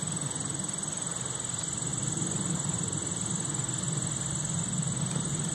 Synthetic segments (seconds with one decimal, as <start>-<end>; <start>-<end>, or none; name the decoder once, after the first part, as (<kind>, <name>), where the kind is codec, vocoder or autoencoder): none